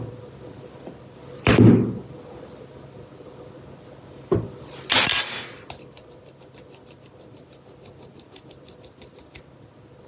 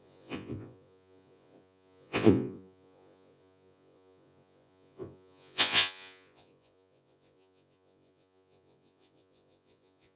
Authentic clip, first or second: first